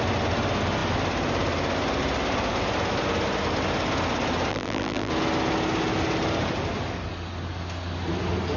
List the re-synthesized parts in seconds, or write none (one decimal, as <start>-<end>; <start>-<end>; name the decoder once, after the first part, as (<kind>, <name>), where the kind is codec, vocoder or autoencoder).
4.5-5.1 (vocoder, BigVGAN v2)